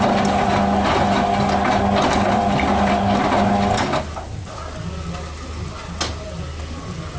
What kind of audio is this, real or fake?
real